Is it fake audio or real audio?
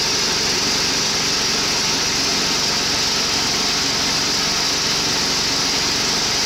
real